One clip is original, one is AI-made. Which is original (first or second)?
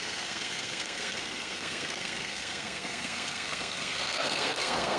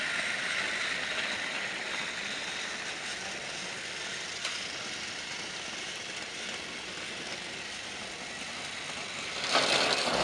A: second